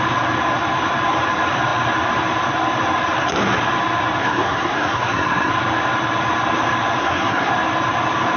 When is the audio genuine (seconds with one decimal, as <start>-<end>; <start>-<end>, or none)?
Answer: 0.0-4.2; 5.5-7.0; 7.5-8.4

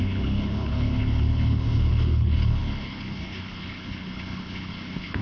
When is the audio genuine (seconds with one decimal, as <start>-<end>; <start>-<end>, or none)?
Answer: none

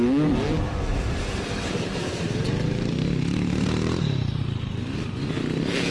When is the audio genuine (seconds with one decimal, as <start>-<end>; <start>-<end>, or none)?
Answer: 0.0-0.9; 4.4-5.9

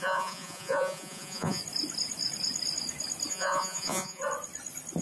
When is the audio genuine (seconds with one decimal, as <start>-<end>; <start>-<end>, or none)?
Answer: 1.6-3.3; 4.2-5.0

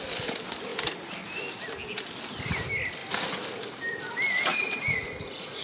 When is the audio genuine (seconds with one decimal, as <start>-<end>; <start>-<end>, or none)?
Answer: 0.0-4.5